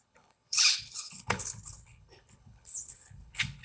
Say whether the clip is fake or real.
fake